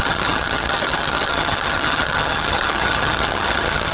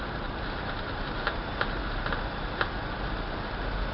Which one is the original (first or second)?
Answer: second